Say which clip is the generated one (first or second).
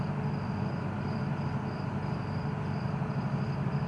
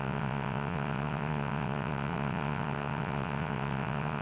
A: second